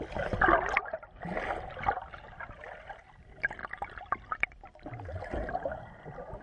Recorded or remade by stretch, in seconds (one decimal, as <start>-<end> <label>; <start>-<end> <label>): 0.0-6.4 recorded